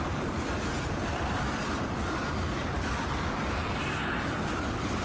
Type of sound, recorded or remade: remade